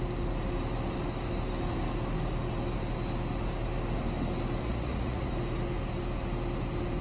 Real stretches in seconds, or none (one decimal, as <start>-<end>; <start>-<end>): 0.0-4.6; 5.3-7.0